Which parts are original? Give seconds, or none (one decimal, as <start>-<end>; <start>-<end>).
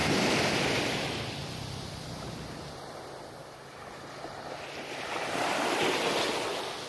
2.7-3.4; 5.1-6.9